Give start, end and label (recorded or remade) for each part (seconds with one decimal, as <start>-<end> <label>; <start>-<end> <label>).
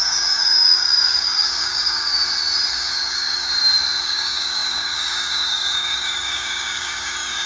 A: 0.0-2.1 remade; 2.1-2.7 recorded; 2.7-3.5 remade; 3.5-4.0 recorded; 4.0-7.5 remade